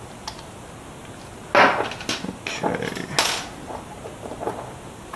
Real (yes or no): yes